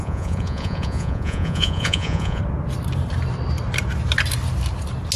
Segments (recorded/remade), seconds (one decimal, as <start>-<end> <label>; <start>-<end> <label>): 0.0-2.4 remade; 2.4-5.2 recorded